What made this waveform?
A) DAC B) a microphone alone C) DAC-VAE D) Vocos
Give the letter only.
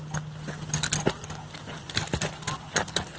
B